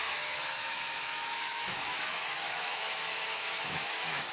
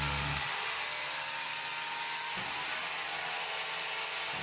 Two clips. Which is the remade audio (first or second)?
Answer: first